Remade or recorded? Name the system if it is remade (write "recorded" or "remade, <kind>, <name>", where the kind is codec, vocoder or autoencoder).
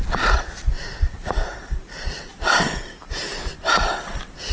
recorded